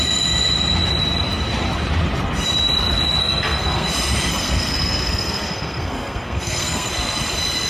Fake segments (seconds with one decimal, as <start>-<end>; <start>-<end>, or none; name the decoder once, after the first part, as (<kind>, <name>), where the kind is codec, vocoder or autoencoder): 3.2-3.9 (codec, SNAC); 4.3-6.9